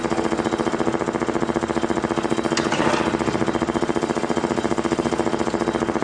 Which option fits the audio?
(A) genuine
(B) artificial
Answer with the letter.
A